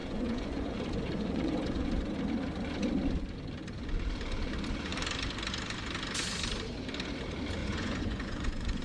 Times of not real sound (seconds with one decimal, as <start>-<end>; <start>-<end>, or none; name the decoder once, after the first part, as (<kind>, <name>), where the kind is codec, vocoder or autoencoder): 0.0-1.9 (vocoder, Vocos); 7.6-8.8